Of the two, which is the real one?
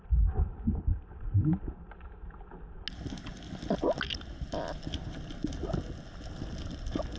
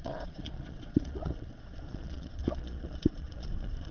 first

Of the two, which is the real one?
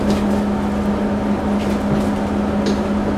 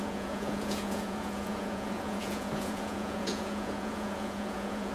first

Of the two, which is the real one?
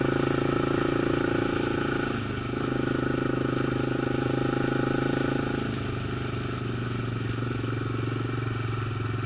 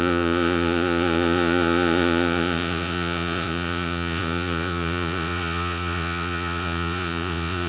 first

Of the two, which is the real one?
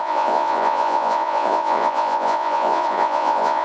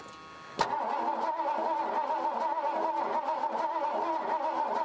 second